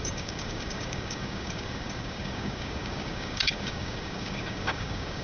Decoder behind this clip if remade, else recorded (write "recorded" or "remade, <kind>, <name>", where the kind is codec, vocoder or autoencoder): remade, codec, DAC